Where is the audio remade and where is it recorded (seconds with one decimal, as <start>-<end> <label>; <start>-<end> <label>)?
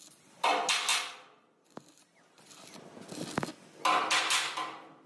0.0-5.1 recorded